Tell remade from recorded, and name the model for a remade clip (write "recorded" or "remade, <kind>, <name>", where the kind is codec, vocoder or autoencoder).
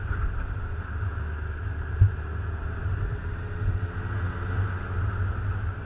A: recorded